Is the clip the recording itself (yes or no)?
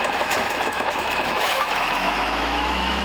no